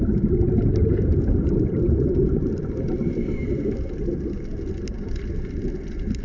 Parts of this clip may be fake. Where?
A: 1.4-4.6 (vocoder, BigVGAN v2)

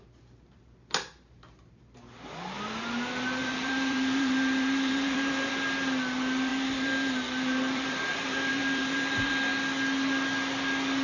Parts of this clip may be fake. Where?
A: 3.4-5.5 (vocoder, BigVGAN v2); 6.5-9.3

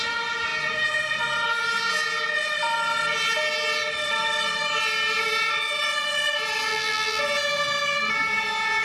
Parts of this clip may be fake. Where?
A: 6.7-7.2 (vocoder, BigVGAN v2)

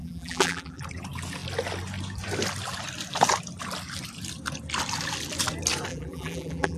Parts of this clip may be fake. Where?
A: 0.0-0.8 (vocoder, BigVGAN v2); 5.9-6.8